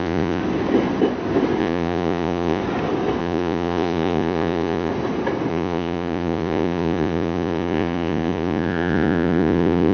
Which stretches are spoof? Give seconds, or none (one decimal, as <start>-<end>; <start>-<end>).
0.0-0.4; 1.6-2.6; 3.2-4.9; 5.5-9.9